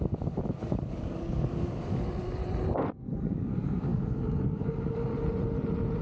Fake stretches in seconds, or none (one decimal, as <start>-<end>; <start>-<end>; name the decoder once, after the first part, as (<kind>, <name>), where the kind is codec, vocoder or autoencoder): 0.0-2.4 (codec, DAC); 3.1-5.1